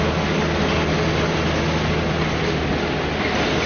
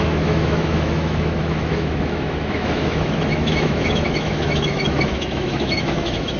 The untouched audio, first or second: first